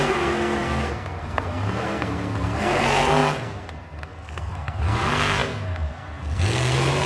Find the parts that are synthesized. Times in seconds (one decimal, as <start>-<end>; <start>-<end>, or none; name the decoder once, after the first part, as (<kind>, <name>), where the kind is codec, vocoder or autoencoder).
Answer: 0.0-7.1 (codec, SNAC)